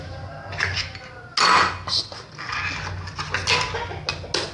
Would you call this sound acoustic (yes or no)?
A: yes